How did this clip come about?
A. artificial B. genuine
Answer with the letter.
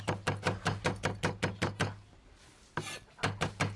B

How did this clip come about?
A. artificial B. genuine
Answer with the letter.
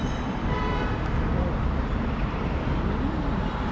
A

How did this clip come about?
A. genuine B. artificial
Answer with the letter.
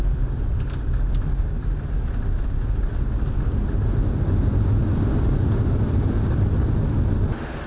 A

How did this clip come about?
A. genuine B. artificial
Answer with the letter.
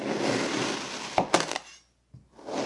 A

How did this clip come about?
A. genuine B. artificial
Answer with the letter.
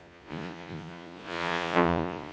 B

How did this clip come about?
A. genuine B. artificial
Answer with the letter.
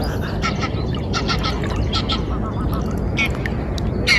A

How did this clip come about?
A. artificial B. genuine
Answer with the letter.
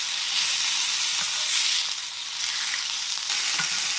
B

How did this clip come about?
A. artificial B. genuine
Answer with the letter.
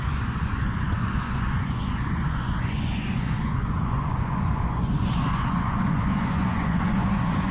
A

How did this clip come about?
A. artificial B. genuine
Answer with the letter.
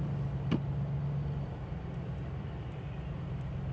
B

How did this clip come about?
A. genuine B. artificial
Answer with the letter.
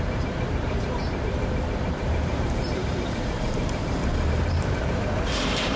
B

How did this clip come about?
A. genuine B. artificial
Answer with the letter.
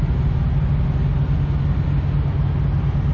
A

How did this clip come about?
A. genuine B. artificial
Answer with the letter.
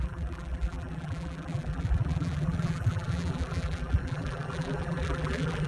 B